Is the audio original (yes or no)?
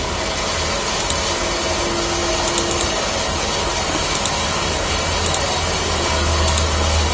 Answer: yes